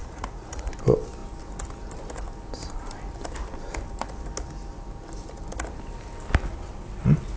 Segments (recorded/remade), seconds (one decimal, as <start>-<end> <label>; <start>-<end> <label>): 0.0-0.7 remade; 0.7-7.4 recorded